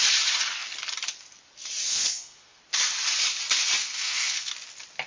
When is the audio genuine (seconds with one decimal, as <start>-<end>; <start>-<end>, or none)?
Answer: 0.0-1.9; 2.6-3.8; 4.5-5.1